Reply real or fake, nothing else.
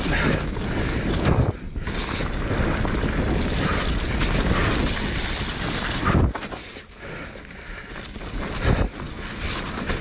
real